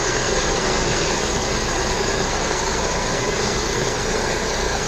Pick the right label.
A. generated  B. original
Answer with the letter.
A